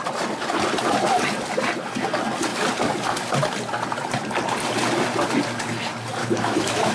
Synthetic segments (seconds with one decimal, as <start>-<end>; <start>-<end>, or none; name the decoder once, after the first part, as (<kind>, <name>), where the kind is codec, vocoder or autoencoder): 6.2-6.9 (autoencoder, DAC-VAE)